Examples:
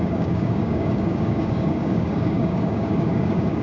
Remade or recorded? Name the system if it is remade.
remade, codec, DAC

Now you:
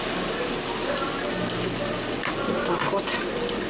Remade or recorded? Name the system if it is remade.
recorded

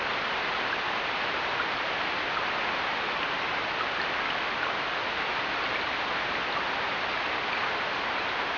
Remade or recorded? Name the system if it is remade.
recorded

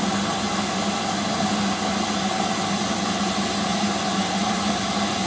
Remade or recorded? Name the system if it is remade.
recorded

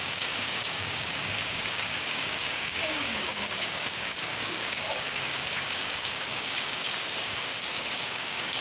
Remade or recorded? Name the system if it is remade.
remade, codec, DAC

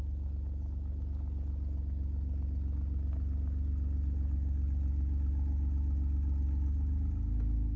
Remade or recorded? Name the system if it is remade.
recorded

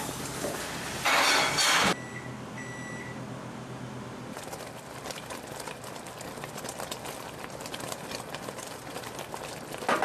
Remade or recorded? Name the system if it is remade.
recorded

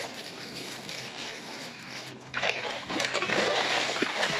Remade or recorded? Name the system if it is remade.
remade, codec, DAC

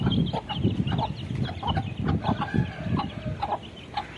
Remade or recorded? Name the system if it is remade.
recorded